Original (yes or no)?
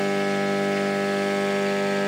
yes